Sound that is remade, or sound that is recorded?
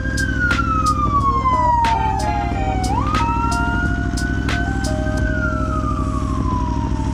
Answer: recorded